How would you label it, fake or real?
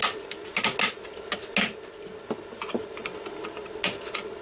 real